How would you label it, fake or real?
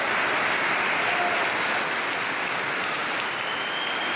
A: real